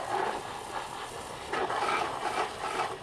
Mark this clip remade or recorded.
recorded